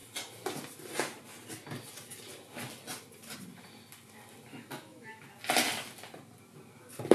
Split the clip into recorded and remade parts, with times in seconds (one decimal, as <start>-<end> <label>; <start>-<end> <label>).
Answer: 0.0-4.5 recorded; 4.5-5.3 remade; 5.3-7.1 recorded